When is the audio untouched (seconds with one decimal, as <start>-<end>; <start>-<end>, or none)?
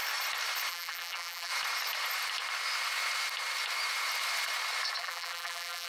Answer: 0.0-0.7; 1.5-5.0